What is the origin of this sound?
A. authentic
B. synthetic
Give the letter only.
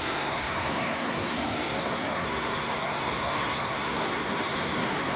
B